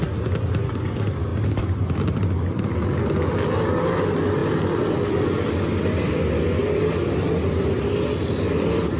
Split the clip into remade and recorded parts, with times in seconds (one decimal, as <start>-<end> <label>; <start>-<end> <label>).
0.0-9.0 recorded